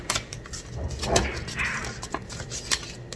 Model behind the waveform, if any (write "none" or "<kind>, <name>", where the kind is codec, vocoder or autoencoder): vocoder, BigVGAN v2